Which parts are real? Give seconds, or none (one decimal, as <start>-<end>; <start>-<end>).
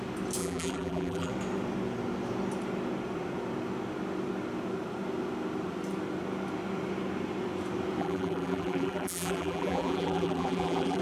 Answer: 0.0-0.4; 1.3-8.0